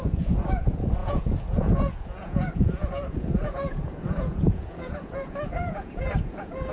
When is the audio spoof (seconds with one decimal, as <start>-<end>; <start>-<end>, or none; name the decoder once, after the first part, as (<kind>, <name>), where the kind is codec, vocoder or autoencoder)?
0.0-6.7 (vocoder, Vocos)